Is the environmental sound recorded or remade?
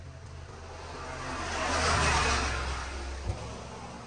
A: recorded